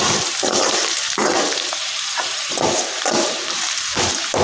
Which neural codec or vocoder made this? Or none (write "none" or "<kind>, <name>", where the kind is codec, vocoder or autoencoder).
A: vocoder, BigVGAN v2